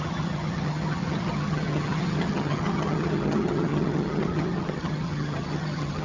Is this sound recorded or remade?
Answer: remade